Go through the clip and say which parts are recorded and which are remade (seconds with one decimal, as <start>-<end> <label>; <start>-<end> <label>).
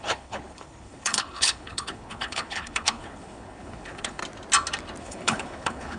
0.0-4.2 remade; 4.2-5.0 recorded; 5.0-6.0 remade